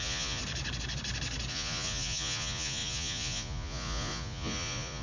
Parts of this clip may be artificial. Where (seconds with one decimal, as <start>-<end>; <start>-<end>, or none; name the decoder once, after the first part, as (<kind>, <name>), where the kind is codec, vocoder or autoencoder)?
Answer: 0.0-0.4 (vocoder, Vocos); 1.5-5.0